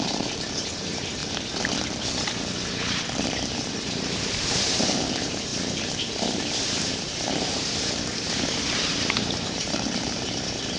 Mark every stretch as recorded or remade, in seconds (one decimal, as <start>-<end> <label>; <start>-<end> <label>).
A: 0.0-1.2 remade; 1.2-3.8 recorded; 3.8-10.8 remade